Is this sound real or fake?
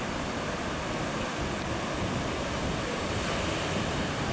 real